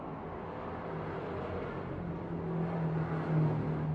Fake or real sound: real